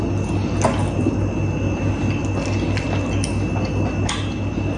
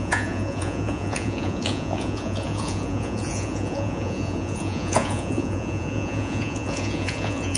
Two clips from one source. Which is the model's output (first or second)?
second